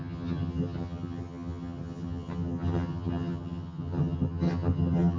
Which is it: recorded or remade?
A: remade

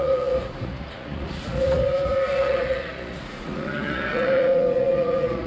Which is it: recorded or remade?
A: remade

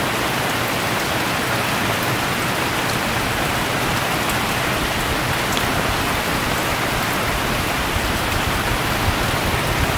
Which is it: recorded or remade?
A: recorded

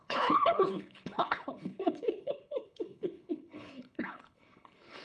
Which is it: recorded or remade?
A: remade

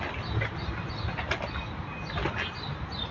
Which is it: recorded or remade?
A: recorded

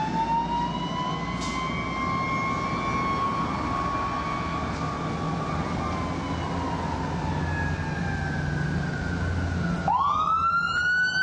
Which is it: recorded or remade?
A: recorded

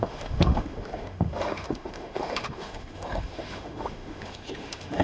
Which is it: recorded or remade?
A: remade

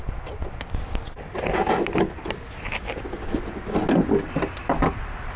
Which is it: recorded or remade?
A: recorded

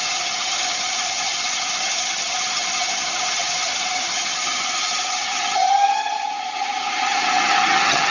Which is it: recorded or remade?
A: remade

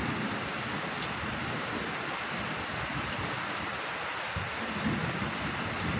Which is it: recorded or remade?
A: recorded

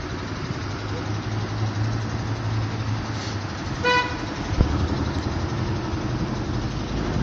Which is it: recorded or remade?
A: recorded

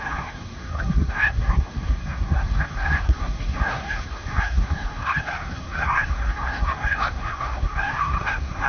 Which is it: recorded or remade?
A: remade